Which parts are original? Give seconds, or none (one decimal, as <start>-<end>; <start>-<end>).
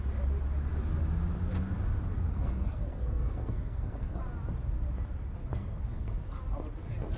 0.0-2.3; 4.2-5.6; 6.4-7.2